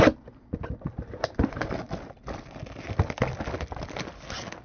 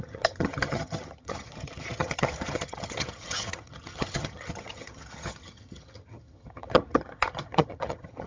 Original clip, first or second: first